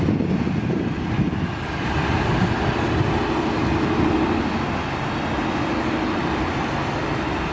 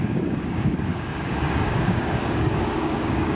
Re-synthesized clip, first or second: second